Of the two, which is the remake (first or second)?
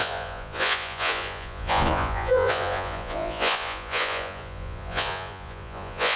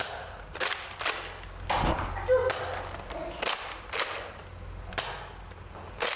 first